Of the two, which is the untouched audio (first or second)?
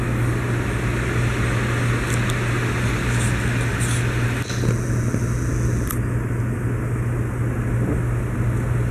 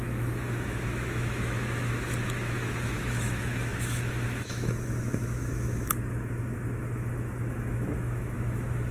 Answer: first